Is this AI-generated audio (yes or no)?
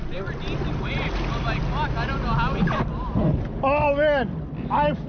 no